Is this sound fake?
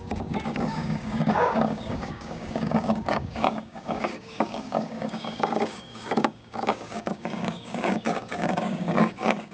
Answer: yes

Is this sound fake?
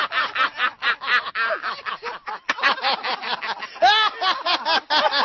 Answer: no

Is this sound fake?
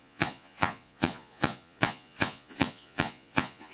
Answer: yes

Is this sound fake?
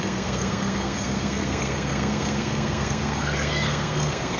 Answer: yes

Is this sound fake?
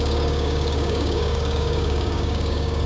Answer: yes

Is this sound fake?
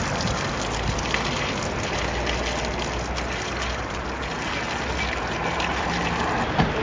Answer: no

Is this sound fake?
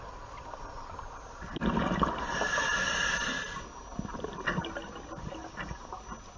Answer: no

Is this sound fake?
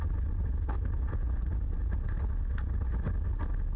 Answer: no